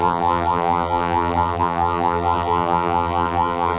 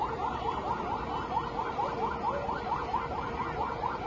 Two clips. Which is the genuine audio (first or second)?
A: second